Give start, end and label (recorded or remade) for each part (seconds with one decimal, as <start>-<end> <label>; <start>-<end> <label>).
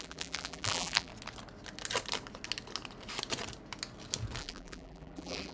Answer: 0.0-1.1 remade; 1.1-4.4 recorded; 4.4-5.5 remade